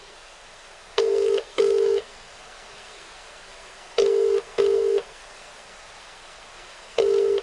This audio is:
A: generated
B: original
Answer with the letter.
A